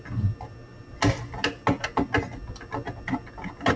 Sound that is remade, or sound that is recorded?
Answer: recorded